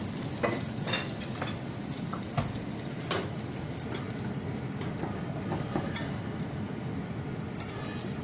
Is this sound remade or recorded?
recorded